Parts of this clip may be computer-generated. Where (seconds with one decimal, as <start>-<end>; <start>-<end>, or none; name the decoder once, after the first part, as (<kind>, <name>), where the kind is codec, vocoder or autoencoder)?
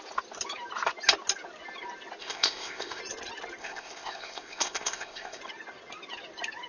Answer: 2.2-3.0 (codec, ZipCodec); 3.6-5.4